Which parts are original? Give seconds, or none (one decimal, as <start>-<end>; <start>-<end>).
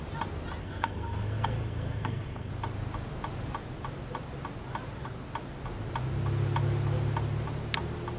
0.0-0.6; 2.5-8.2